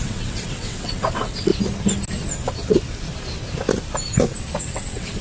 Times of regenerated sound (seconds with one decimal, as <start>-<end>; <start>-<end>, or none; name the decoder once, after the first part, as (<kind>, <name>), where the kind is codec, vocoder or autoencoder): 0.0-1.5 (vocoder, WaveNeXt); 4.6-5.2